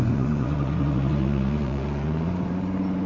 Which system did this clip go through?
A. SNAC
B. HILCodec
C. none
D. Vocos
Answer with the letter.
D